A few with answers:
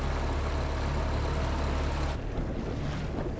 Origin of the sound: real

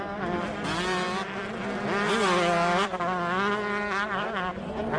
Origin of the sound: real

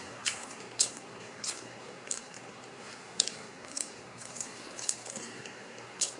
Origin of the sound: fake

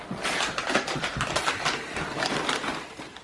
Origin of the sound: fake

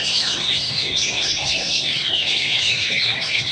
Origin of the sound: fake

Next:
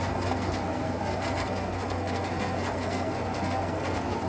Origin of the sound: fake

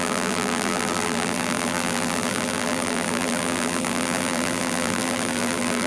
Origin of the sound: fake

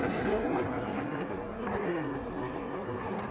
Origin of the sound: fake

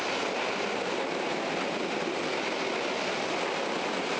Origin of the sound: real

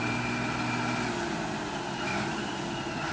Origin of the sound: real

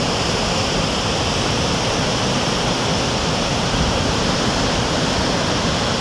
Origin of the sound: real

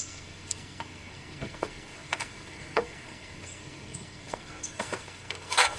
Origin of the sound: fake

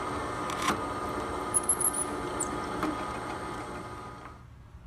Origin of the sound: fake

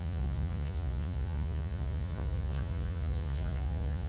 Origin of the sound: fake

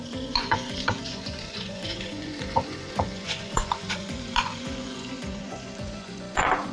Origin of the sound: fake